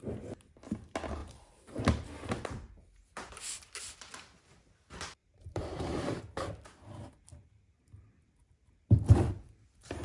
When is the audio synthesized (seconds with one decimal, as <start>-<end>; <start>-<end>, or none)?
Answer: 1.2-1.8; 5.2-6.2